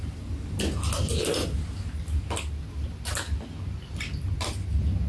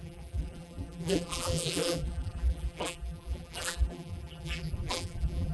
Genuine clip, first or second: first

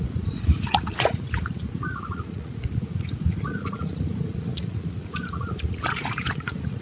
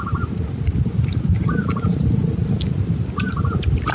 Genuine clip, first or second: second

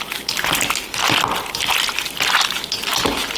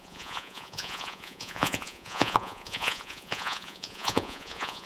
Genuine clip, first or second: first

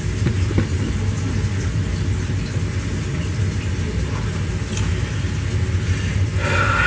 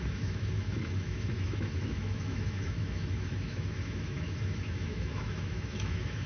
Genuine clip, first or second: first